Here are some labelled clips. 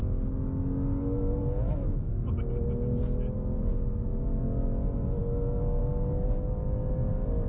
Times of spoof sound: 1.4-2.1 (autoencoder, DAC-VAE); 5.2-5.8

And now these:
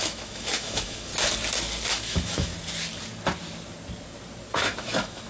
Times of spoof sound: 0.0-1.1 (autoencoder, DAC-VAE); 1.9-2.5; 4.5-5.3

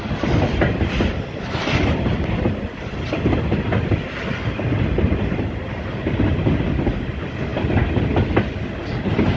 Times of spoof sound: none